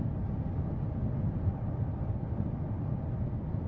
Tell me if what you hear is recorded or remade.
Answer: recorded